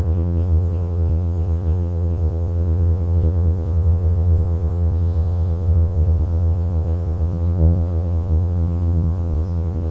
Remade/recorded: remade